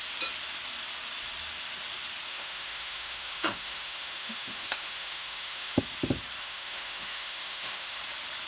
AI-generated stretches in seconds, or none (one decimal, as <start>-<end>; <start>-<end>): 2.3-5.8; 6.4-8.0